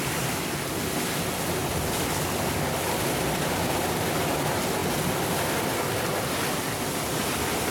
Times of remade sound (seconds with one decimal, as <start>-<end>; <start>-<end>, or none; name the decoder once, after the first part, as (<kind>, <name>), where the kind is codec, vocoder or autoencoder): none